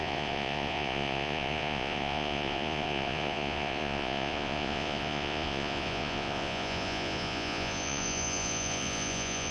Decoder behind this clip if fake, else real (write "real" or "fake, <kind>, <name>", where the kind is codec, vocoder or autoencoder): fake, vocoder, Vocos